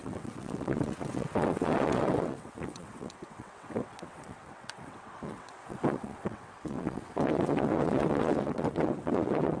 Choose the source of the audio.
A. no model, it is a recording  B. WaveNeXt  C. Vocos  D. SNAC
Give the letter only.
B